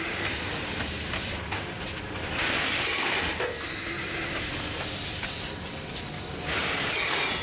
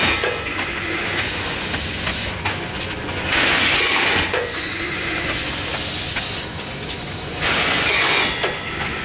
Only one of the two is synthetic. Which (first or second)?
second